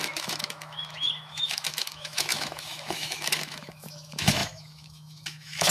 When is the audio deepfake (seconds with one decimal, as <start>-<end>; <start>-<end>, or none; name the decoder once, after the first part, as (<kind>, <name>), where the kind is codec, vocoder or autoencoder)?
0.0-5.7 (autoencoder, DAC-VAE)